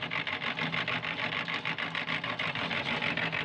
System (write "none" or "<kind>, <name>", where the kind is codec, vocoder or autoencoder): none